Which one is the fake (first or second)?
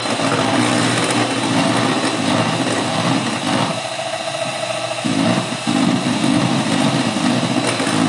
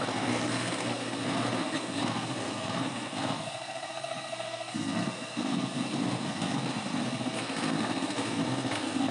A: second